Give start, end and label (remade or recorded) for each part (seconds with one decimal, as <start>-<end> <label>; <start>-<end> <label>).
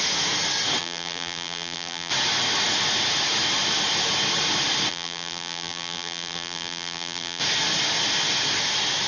0.0-0.8 recorded; 0.8-2.1 remade; 2.1-4.9 recorded; 4.9-7.4 remade; 7.4-9.1 recorded